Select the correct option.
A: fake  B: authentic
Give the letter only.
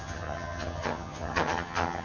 A